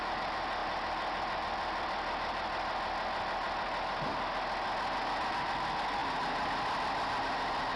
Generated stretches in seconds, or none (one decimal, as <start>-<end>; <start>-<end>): none

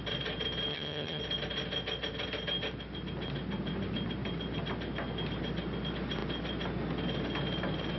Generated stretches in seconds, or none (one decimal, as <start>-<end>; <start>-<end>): 0.7-1.2